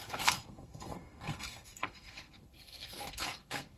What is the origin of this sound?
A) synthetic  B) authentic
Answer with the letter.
A